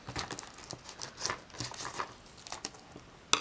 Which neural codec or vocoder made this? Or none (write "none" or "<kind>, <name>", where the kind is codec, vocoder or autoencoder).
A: none